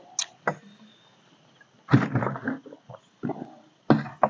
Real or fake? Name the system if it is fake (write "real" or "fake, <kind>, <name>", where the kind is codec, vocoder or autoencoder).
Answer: real